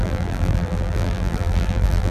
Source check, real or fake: fake